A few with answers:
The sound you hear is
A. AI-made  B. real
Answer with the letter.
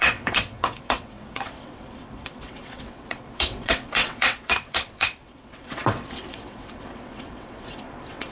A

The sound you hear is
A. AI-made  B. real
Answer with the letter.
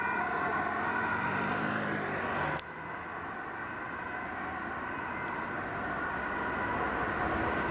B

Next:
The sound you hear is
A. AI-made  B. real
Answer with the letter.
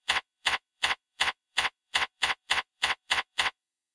A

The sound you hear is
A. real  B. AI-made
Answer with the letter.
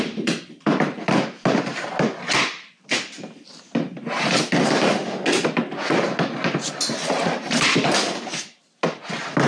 A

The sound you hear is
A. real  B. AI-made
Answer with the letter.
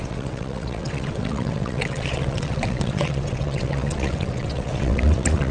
B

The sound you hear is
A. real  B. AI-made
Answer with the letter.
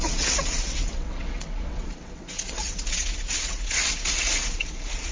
B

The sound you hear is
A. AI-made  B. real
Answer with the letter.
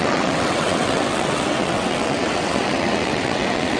A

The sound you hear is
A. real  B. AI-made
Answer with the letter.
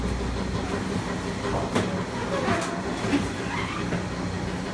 A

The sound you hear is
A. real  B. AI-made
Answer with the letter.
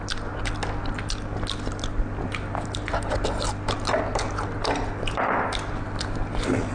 A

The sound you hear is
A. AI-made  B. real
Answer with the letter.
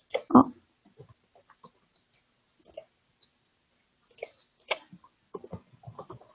B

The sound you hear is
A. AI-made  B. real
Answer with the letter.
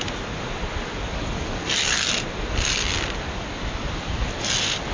B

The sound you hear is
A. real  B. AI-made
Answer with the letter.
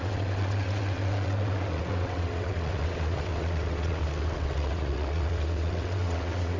B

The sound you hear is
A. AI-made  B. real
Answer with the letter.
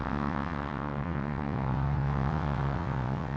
A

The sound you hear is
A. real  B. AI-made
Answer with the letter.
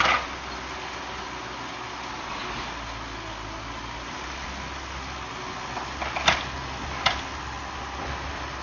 A